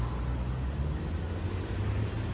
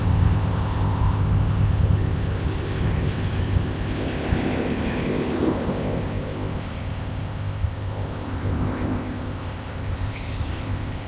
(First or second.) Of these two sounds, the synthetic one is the second